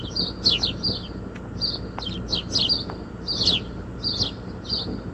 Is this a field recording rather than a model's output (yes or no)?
yes